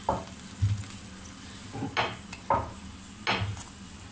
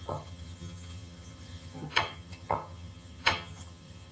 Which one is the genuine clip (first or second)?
first